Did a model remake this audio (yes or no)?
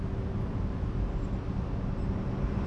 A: no